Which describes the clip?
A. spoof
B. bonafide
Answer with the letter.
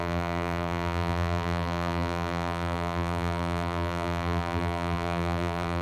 A